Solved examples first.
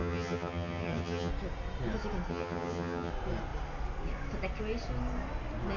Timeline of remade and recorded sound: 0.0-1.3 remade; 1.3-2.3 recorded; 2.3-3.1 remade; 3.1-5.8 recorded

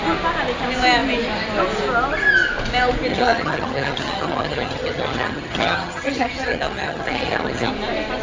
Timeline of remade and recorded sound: 0.0-3.1 recorded; 3.1-7.7 remade; 7.7-8.2 recorded